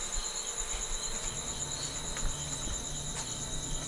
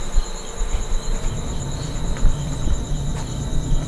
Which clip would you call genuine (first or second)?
first